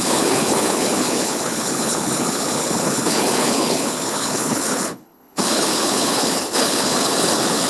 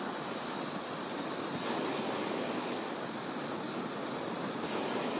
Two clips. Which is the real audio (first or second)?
second